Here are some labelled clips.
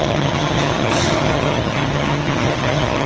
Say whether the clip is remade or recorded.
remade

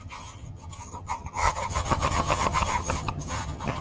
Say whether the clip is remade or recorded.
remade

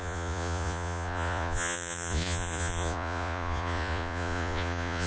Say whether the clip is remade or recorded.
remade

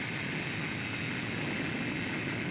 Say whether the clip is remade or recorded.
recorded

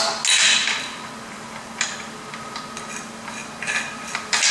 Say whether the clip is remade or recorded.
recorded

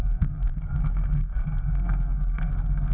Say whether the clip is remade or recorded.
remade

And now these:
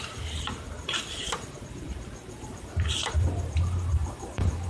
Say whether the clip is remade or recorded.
remade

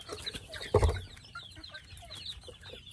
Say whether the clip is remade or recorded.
recorded